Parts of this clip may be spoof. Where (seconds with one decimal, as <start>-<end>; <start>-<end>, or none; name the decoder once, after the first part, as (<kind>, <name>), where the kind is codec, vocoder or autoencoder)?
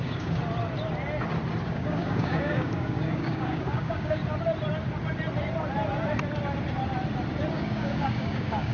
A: 0.0-0.4 (codec, DAC); 1.6-4.2; 7.5-8.7